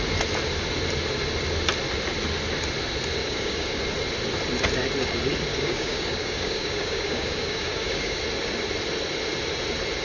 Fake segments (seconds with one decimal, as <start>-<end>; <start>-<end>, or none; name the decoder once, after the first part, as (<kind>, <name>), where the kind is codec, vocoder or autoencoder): 3.2-3.8 (codec, DAC); 5.5-8.2